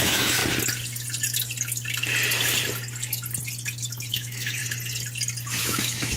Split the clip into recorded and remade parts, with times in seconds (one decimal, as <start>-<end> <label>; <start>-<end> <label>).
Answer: 0.0-0.4 remade; 0.4-4.1 recorded; 4.1-4.6 remade; 4.6-5.6 recorded; 5.6-6.2 remade